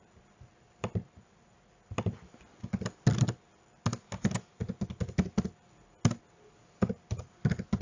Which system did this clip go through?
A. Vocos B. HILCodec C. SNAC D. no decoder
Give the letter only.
D